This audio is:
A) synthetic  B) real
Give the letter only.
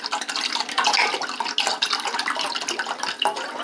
B